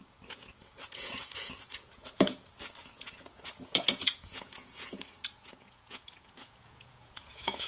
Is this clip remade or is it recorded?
remade